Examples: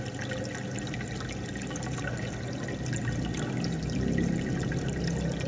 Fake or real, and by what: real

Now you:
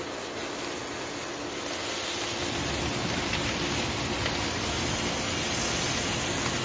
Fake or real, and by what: real